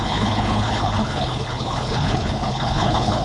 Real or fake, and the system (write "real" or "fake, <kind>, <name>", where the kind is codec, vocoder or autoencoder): fake, codec, HILCodec